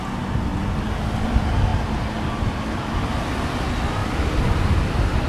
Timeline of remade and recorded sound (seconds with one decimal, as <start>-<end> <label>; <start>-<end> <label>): 0.0-5.3 recorded

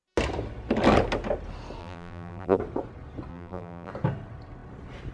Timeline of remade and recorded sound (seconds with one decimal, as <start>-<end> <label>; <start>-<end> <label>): 0.0-1.8 recorded; 1.8-2.6 remade; 2.6-3.3 recorded; 3.3-3.9 remade; 3.9-5.1 recorded